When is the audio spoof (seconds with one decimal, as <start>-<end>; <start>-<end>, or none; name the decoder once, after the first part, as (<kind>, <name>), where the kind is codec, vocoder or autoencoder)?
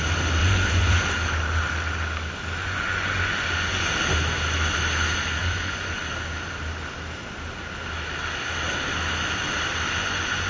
0.4-1.0 (vocoder, Vocos); 2.6-3.9; 5.4-6.0; 10.0-10.5